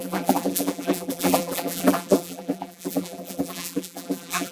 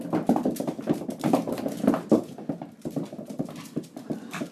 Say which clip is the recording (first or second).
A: second